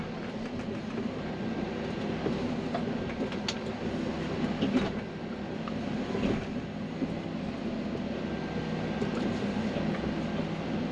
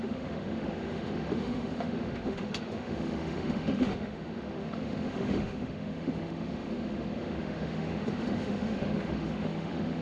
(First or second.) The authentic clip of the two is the first